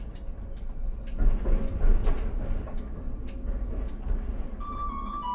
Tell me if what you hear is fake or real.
real